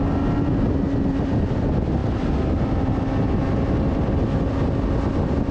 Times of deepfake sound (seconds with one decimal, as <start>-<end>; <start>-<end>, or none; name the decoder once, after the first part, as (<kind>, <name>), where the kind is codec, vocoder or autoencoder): none